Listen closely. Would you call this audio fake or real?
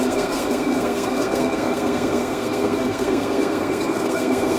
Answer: fake